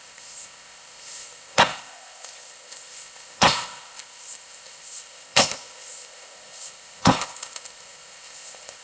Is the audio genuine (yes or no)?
no